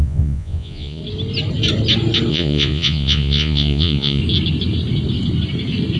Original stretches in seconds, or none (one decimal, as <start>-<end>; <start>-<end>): 1.0-2.3; 4.2-6.0